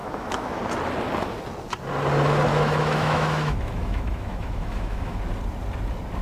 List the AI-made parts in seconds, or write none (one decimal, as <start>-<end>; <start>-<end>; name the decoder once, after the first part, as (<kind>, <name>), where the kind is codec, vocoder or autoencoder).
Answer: 0.0-0.6 (autoencoder, DAC-VAE); 2.5-5.2